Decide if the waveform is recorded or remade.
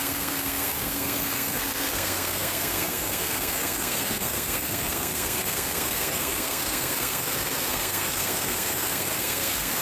remade